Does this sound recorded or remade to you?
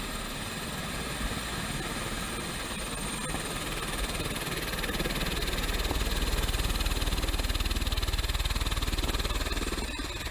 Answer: recorded